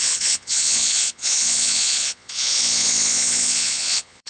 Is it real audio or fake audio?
fake